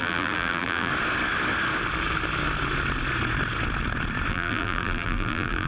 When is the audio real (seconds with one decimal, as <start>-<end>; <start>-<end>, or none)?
0.9-4.3